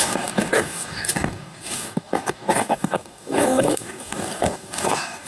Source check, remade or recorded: remade